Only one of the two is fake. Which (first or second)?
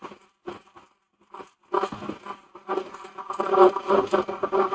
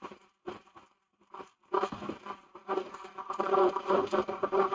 second